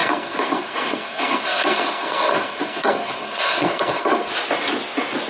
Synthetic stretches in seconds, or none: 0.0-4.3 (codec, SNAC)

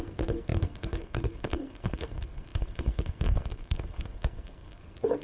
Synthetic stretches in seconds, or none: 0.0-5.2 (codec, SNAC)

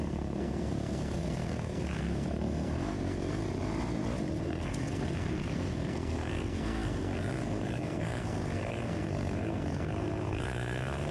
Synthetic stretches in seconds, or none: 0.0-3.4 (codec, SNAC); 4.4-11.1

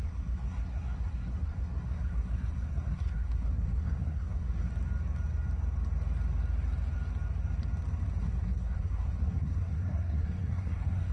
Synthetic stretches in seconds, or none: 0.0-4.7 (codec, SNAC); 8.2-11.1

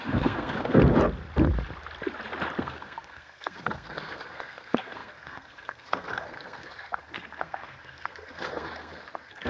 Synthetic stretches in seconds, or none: 0.0-0.8 (codec, SNAC); 2.6-9.5

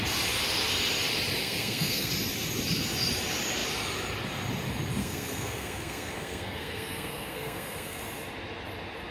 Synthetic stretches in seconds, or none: 1.4-2.1 (codec, SNAC); 5.0-8.0

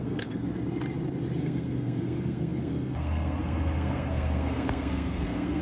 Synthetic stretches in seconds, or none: 0.0-0.4 (codec, SNAC); 1.4-5.6

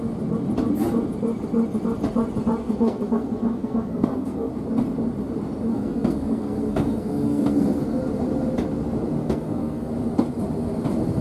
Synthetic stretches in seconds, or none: 2.6-4.5 (codec, SNAC); 5.7-8.0; 9.2-9.9